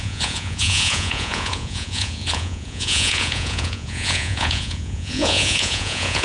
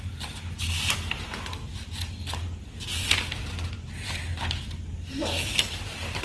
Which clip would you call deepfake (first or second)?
first